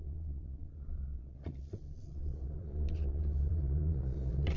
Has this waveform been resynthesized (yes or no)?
yes